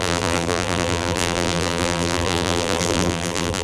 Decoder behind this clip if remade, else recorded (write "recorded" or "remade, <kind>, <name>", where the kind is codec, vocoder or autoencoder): remade, vocoder, BigVGAN v2